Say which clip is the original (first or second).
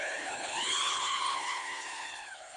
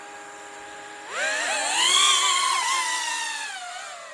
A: second